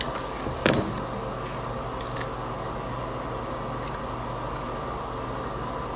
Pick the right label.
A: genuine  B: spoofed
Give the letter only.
A